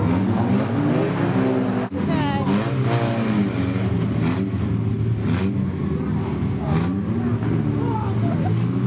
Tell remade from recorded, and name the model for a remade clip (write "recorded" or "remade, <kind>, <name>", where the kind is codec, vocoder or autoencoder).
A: recorded